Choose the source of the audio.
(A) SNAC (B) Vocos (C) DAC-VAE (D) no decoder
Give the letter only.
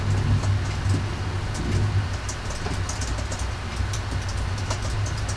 D